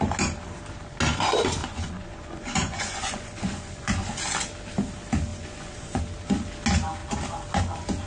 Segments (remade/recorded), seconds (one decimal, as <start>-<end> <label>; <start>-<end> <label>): 0.0-1.6 recorded; 1.6-4.1 remade; 4.1-5.3 recorded; 5.3-6.0 remade; 6.0-8.1 recorded